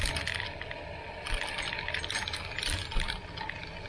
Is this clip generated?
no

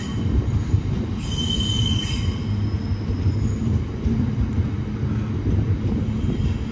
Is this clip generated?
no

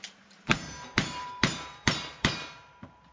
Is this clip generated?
yes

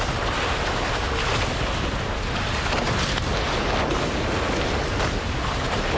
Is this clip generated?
no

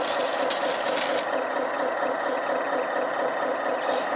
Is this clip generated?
no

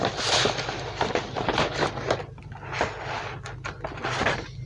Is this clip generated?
no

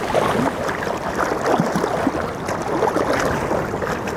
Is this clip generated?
no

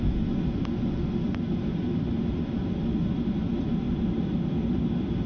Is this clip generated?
no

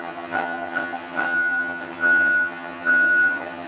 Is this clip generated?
yes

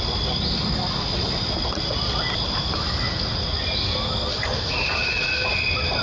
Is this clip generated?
no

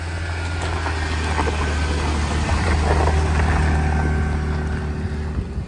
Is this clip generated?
no